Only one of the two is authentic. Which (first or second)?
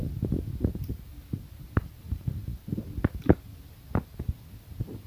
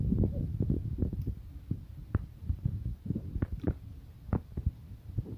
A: first